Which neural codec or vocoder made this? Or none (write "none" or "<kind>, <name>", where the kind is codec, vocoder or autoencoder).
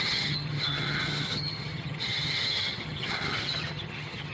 vocoder, HiFi-GAN